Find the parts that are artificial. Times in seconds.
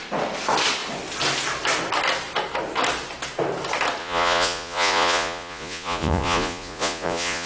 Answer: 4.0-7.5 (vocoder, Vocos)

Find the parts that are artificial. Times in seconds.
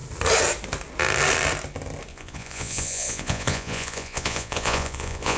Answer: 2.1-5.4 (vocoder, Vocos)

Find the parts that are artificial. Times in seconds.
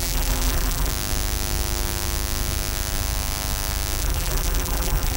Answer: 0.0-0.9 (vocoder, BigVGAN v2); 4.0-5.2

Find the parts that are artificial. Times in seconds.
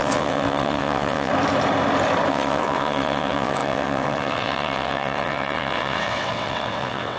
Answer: 0.0-1.3 (vocoder, WaveNeXt); 2.3-7.2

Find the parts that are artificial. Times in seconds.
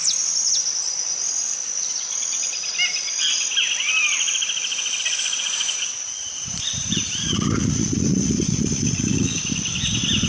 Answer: 5.3-9.4 (vocoder, Vocos)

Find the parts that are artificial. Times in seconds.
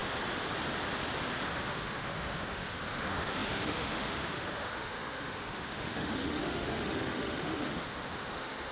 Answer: 1.5-8.7 (autoencoder, DAC-VAE)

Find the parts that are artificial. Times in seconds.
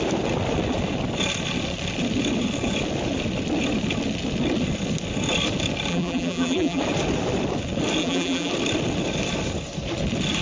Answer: 5.9-6.8 (vocoder, BigVGAN v2); 8.0-8.5